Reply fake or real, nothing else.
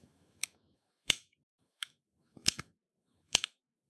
fake